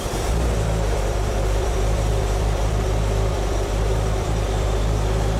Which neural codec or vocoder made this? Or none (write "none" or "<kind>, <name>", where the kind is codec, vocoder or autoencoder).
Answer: vocoder, BigVGAN v2